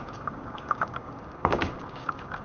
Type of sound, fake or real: fake